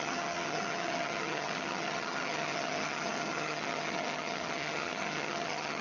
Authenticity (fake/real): fake